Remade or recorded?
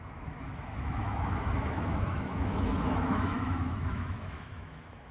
remade